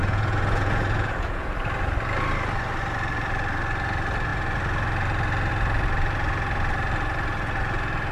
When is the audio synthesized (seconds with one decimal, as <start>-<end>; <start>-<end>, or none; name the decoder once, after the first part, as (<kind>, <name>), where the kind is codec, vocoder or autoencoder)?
0.0-1.5 (vocoder, Vocos)